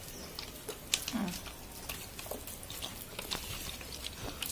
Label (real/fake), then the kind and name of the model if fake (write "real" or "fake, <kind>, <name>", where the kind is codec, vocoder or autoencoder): real